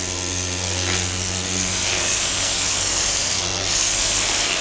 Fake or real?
fake